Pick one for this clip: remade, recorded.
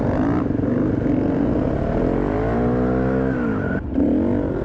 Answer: recorded